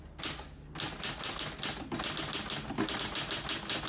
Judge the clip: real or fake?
real